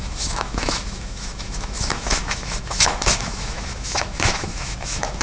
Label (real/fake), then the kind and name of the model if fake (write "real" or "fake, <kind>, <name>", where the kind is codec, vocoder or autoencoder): fake, autoencoder, DAC-VAE